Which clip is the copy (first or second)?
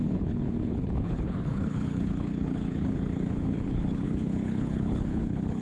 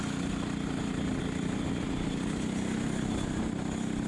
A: first